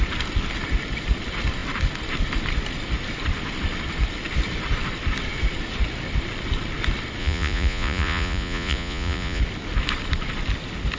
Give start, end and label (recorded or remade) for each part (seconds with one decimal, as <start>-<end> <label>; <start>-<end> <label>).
0.0-7.2 recorded; 7.2-9.4 remade; 9.4-11.0 recorded